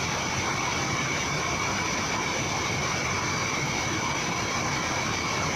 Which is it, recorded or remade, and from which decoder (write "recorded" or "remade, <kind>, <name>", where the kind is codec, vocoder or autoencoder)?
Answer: recorded